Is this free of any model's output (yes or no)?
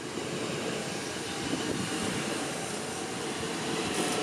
yes